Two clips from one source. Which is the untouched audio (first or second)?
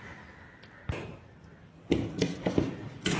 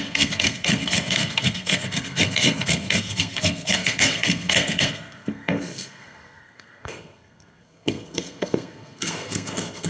first